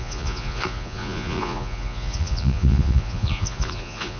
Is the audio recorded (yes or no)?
no